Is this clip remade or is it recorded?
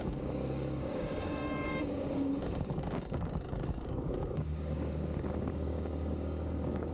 remade